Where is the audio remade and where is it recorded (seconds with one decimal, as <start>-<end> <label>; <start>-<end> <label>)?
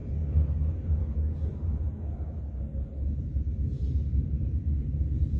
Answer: 0.0-1.0 remade; 1.0-1.5 recorded; 1.5-4.7 remade; 4.7-5.4 recorded